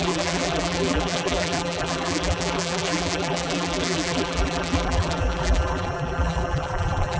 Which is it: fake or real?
fake